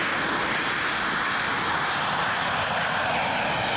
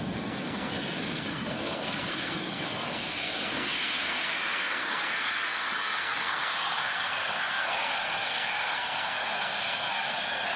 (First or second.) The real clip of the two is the first